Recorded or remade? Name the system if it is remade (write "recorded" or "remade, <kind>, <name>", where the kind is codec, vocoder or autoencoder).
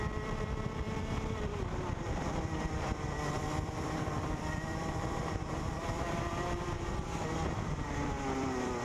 remade, vocoder, BigVGAN v2